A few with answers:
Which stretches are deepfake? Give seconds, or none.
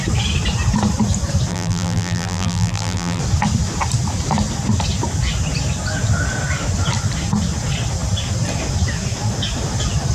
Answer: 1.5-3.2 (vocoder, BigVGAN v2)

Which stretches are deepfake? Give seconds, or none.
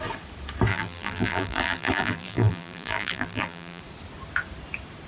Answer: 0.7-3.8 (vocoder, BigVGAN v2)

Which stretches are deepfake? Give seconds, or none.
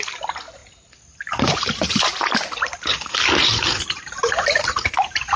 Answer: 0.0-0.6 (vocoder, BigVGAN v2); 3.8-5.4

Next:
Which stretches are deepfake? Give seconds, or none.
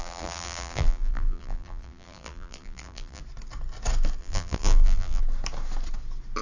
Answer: 0.0-3.2 (vocoder, BigVGAN v2); 4.2-5.2